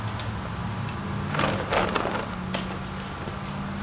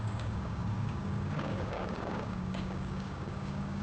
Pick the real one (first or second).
first